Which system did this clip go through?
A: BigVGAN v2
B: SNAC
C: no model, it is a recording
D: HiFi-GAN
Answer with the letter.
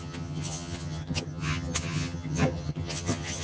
D